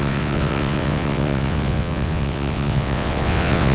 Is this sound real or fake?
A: fake